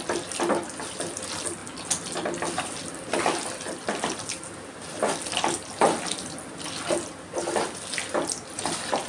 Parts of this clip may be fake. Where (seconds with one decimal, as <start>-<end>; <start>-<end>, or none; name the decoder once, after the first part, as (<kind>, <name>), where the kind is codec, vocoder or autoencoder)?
none